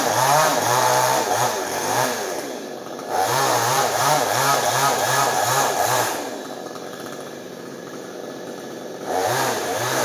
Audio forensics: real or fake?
fake